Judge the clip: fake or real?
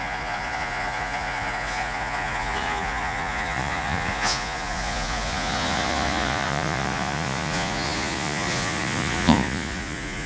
fake